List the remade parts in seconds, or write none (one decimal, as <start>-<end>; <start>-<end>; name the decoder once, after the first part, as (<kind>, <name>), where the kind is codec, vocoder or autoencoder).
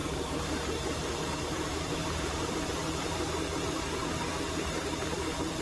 0.0-2.5 (vocoder, BigVGAN v2)